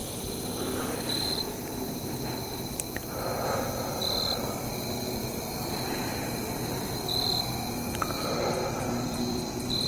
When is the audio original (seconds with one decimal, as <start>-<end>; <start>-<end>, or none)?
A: 0.0-5.2; 9.4-9.9